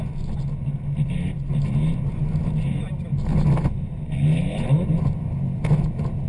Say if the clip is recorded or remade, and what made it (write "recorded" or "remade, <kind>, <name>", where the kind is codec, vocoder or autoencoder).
recorded